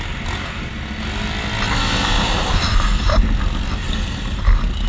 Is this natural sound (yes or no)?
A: yes